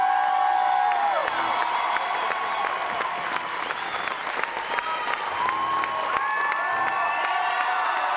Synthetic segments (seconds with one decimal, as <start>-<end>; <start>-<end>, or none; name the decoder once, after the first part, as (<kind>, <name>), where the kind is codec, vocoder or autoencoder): none